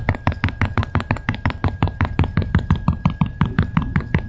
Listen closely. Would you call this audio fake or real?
fake